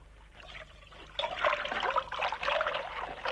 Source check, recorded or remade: recorded